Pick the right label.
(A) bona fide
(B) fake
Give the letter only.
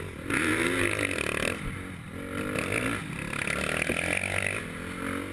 A